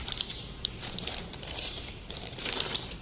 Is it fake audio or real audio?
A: fake